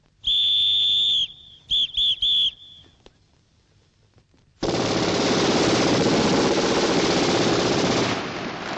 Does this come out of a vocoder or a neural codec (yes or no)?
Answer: no